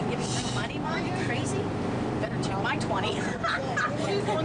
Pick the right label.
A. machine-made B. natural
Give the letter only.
B